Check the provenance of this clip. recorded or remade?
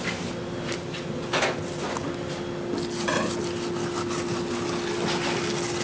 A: recorded